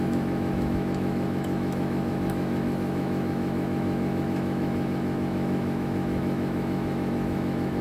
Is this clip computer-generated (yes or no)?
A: yes